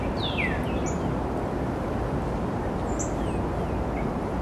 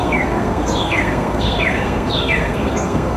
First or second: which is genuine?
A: first